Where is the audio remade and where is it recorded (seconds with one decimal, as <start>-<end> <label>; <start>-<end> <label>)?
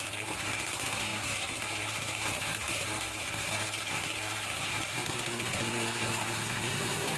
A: 0.0-7.2 remade